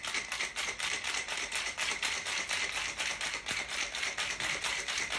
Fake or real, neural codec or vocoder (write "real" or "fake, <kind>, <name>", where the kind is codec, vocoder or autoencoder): fake, vocoder, BigVGAN v2